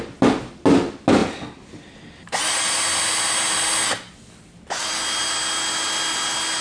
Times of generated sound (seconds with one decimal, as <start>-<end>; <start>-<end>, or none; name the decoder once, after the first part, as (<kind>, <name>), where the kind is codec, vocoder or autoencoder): none